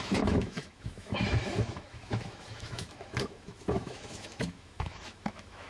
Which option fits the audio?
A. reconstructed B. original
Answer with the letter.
A